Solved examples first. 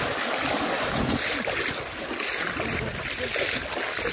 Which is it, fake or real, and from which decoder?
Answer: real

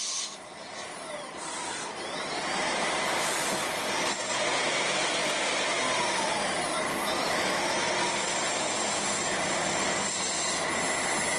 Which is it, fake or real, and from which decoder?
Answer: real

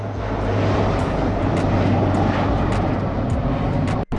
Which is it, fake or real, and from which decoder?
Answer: real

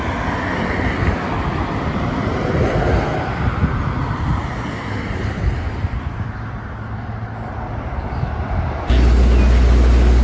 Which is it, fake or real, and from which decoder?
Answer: real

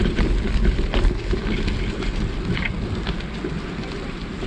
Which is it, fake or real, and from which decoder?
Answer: real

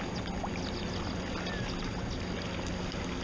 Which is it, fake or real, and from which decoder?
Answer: real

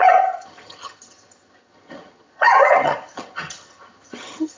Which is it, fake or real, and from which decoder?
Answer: fake, vocoder, HiFi-GAN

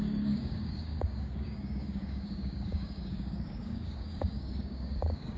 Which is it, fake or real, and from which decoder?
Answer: fake, codec, DAC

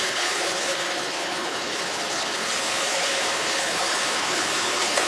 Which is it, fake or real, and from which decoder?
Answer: fake, codec, HILCodec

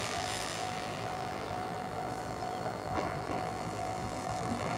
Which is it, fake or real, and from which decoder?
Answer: fake, vocoder, BigVGAN v2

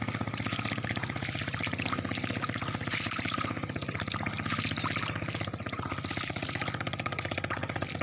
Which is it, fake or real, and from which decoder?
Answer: real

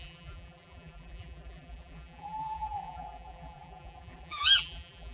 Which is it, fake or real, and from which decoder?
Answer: fake, vocoder, BigVGAN v2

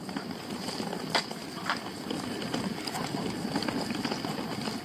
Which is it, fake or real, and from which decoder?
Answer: real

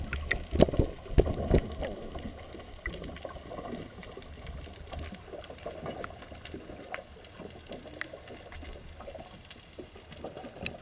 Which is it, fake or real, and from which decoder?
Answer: real